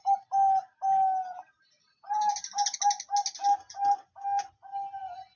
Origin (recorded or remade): recorded